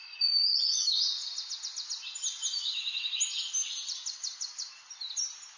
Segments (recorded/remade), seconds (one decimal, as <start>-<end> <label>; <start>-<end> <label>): 0.0-5.6 recorded